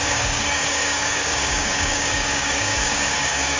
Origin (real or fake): fake